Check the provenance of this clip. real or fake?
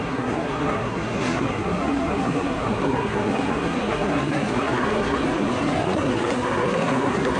fake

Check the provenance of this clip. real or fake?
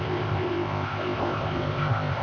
fake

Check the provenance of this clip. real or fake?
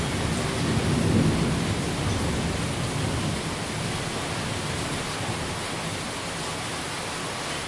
real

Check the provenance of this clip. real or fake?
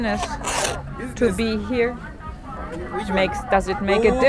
real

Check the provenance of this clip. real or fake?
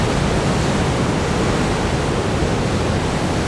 real